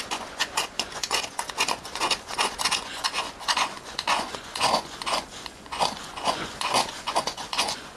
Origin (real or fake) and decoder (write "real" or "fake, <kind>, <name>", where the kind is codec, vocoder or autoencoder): fake, vocoder, Vocos